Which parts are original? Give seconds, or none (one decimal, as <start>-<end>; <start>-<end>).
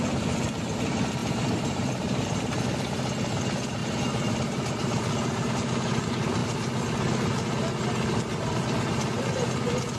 0.0-1.2; 2.6-3.8; 6.0-10.0